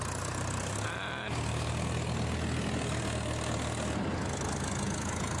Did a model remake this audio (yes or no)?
no